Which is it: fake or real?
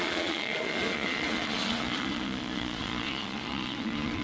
fake